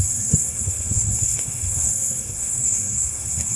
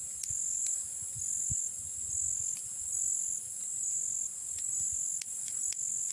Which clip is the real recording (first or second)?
second